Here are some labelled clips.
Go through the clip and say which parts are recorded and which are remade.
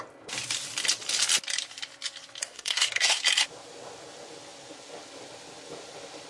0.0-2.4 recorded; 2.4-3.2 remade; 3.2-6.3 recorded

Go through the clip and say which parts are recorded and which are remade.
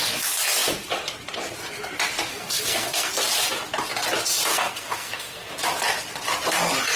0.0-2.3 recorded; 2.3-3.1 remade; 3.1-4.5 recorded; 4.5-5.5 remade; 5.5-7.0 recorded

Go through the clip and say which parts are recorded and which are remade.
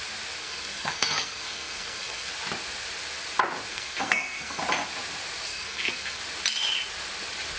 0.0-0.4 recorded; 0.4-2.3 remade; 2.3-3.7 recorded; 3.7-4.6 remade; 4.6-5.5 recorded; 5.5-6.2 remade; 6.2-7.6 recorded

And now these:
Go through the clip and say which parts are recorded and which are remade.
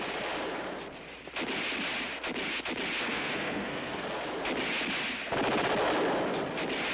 0.0-3.1 recorded; 3.1-4.0 remade; 4.0-6.9 recorded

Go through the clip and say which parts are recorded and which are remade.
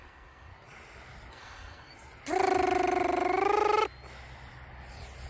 0.0-0.5 remade; 0.5-1.3 recorded; 1.3-1.9 remade; 1.9-5.3 recorded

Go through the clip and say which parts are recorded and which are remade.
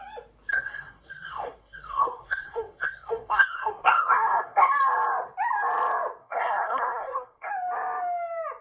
0.0-0.5 recorded; 0.5-4.7 remade; 4.7-6.2 recorded; 6.2-7.5 remade; 7.5-8.6 recorded